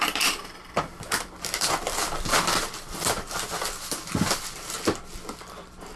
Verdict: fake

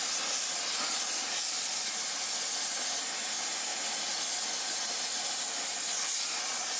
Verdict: fake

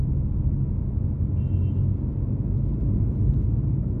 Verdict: real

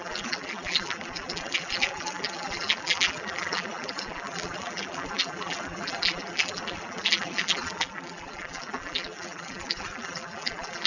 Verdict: fake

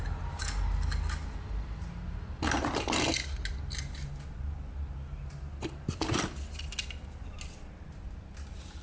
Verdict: real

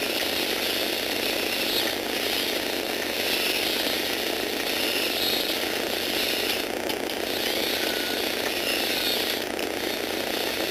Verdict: real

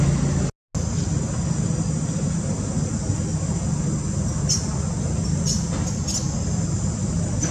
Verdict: real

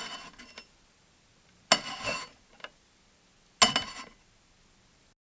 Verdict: real